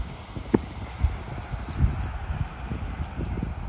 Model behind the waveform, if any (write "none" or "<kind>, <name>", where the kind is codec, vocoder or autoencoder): none